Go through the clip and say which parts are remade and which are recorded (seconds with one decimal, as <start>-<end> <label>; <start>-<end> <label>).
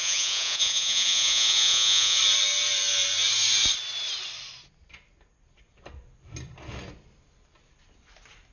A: 0.0-2.2 remade; 2.2-8.5 recorded